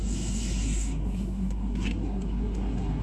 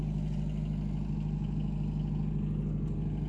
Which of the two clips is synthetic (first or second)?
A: first